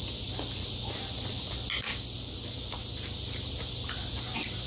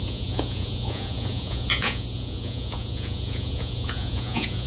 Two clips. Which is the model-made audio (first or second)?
second